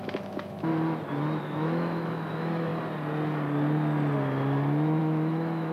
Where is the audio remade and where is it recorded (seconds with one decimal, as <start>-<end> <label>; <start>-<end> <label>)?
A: 0.0-0.7 remade; 0.7-1.4 recorded; 1.4-2.7 remade; 2.7-5.0 recorded; 5.0-5.7 remade